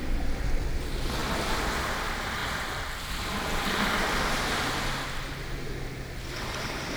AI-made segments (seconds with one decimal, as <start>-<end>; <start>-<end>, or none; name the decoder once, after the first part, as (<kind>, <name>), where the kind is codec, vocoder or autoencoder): none